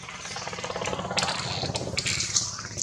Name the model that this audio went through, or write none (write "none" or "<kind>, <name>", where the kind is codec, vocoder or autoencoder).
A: none